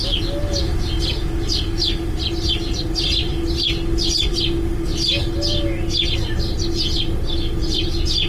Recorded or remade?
recorded